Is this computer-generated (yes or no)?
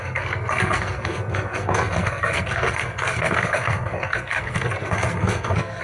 yes